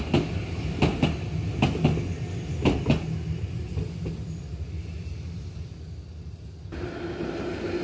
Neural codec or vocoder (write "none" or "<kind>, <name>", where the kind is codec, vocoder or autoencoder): none